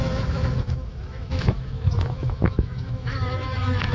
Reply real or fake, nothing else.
fake